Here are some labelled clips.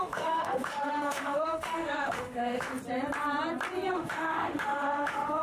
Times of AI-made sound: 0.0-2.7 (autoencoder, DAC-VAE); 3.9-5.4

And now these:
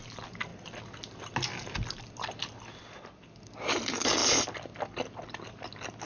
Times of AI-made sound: none

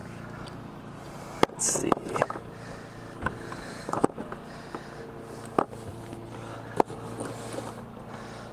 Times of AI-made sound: 1.8-2.5 (autoencoder, DAC-VAE); 3.7-4.2